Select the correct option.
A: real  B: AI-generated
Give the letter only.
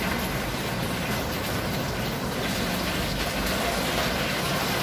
A